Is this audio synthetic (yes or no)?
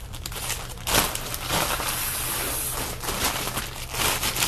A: no